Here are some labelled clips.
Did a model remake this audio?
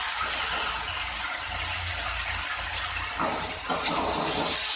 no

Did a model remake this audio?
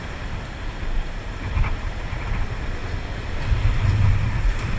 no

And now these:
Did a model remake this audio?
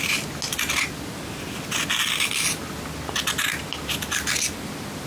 no